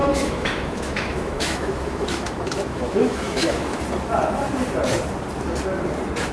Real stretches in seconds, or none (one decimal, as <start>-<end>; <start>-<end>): 3.8-6.3